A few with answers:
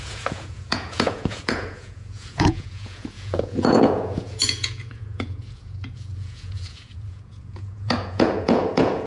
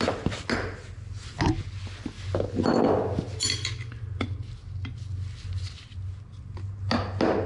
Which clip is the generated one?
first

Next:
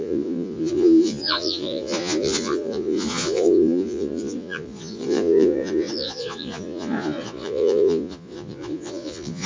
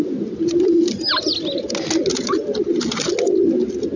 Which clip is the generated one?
first